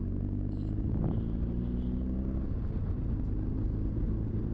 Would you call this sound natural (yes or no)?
yes